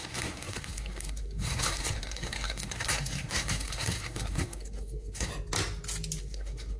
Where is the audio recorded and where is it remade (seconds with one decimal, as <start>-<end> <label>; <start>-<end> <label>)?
0.0-5.3 remade; 5.3-6.2 recorded; 6.2-6.8 remade